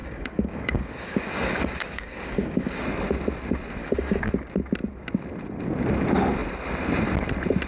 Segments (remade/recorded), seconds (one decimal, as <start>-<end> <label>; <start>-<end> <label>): 0.0-2.8 remade; 2.8-3.8 recorded; 3.8-4.3 remade; 4.3-7.7 recorded